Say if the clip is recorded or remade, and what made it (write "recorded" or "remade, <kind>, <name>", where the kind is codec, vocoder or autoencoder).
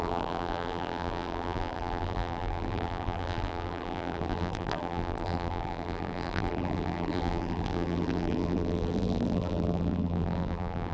remade, vocoder, BigVGAN v2